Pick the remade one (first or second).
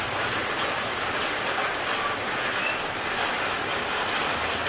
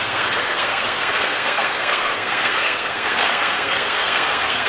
second